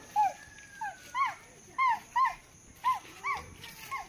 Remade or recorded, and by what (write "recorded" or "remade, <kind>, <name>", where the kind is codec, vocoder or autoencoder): recorded